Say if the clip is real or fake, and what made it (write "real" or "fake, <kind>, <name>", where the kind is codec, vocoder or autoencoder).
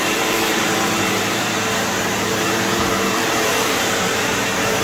fake, vocoder, BigVGAN v2